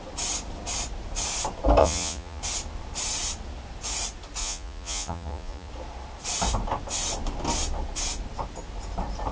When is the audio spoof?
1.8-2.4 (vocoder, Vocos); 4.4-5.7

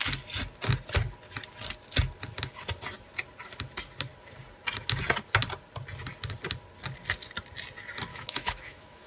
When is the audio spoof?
8.1-9.1 (autoencoder, DAC-VAE)

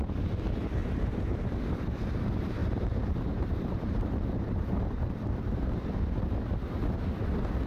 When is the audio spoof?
0.8-1.5 (vocoder, BigVGAN v2); 2.6-5.7

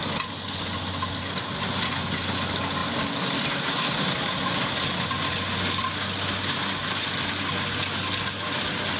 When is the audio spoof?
none

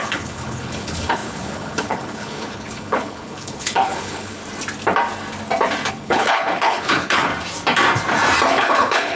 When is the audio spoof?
0.0-4.4 (codec, HILCodec); 5.9-7.3; 8.5-9.2

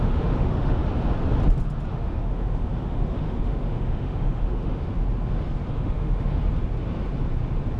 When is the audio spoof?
0.0-0.8 (autoencoder, DAC-VAE); 1.9-4.9; 5.7-6.4

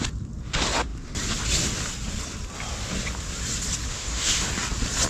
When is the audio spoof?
3.9-4.5 (autoencoder, DAC-VAE)